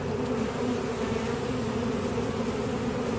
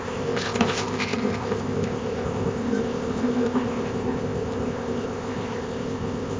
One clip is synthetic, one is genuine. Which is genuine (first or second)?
first